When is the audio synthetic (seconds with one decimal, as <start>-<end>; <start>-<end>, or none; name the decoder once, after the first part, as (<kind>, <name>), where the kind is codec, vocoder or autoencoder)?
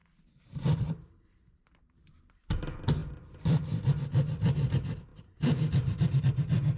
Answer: 0.0-2.1 (vocoder, BigVGAN v2); 3.0-3.6; 5.1-6.2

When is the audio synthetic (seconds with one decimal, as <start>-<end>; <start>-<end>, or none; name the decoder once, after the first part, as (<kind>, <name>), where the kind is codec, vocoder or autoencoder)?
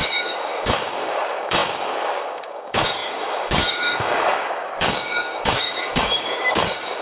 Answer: 0.0-7.0 (codec, DAC)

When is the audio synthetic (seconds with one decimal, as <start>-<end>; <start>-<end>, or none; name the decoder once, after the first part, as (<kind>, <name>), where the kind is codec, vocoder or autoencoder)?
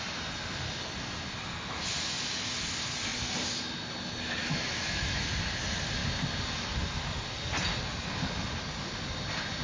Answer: 4.4-5.2 (autoencoder, DAC-VAE)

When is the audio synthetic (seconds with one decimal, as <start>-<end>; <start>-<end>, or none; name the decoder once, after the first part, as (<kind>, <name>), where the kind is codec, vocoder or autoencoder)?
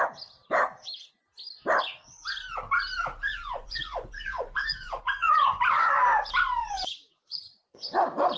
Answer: 3.2-6.0 (vocoder, Vocos); 6.6-7.9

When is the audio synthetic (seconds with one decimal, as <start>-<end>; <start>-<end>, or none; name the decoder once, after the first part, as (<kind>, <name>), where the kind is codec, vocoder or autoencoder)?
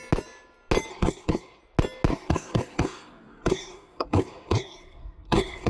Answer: 0.9-1.6 (codec, SNAC); 2.1-5.7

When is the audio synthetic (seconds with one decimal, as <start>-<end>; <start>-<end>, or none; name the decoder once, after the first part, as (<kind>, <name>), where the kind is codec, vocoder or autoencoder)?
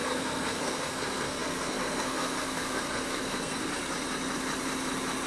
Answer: 0.0-3.7 (codec, SNAC)